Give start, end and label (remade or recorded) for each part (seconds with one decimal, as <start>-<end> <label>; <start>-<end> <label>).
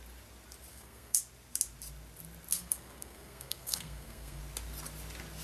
0.0-0.7 recorded; 0.7-1.2 remade; 1.2-2.5 recorded; 2.5-4.4 remade; 4.4-5.4 recorded